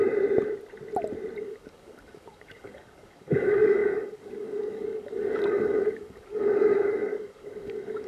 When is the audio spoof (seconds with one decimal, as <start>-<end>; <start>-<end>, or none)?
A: 1.4-8.1